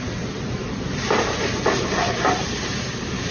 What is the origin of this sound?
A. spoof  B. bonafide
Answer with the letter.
A